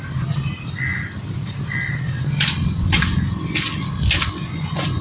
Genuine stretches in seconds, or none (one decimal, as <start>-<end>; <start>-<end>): 0.0-4.4